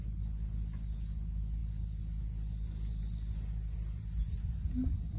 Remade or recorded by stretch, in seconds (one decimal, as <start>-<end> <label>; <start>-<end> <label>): 0.0-5.2 recorded